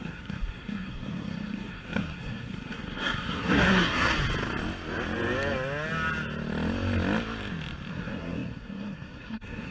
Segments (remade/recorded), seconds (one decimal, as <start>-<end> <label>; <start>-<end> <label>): 0.0-4.1 remade; 4.1-7.9 recorded; 7.9-9.7 remade